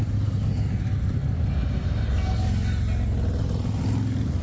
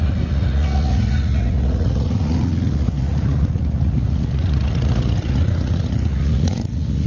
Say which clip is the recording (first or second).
first